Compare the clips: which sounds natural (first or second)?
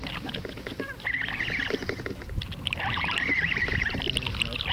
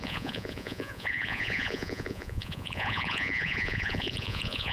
first